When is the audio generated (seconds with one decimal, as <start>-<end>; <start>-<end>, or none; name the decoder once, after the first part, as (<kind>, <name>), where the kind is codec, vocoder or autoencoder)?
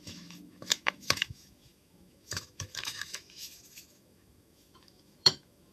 0.0-5.7 (autoencoder, DAC-VAE)